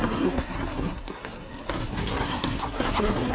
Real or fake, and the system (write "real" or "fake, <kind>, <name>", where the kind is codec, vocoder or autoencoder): fake, codec, SNAC